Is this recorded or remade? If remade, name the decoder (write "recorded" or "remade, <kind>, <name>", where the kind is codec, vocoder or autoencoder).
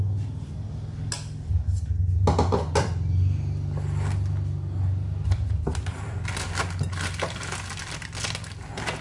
recorded